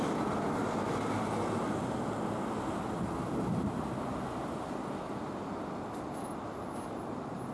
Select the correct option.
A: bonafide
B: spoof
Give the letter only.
A